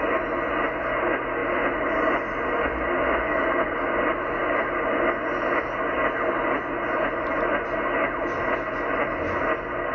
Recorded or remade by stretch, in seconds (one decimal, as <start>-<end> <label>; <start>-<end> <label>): 0.0-9.9 recorded